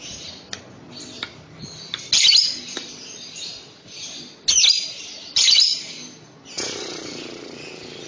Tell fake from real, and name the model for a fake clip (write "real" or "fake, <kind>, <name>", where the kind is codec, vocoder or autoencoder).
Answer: real